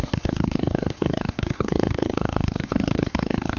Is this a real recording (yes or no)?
no